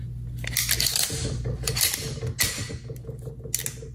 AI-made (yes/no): no